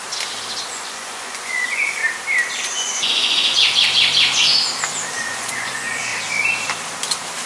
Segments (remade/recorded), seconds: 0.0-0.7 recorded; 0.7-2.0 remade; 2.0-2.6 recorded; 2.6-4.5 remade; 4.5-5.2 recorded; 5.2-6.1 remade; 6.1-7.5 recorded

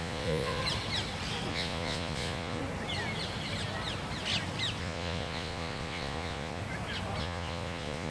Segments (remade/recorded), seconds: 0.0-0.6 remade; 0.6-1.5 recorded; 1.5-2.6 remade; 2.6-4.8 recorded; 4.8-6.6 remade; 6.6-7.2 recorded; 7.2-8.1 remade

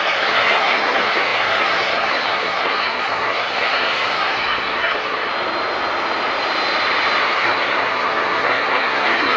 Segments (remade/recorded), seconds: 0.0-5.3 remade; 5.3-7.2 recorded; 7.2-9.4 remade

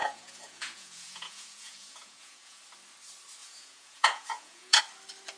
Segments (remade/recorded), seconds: 0.0-2.6 remade; 2.6-3.4 recorded; 3.4-4.8 remade; 4.8-5.4 recorded

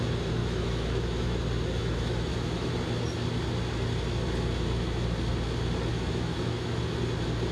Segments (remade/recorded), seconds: 0.0-0.4 recorded; 0.4-1.4 remade; 1.4-1.8 recorded; 1.8-2.7 remade; 2.7-5.9 recorded; 5.9-6.8 remade; 6.8-7.5 recorded

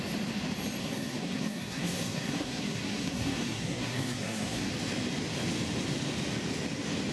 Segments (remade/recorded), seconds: 0.0-0.8 recorded; 0.8-4.7 remade; 4.7-7.1 recorded

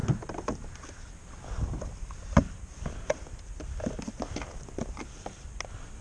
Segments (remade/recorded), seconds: 0.0-6.0 recorded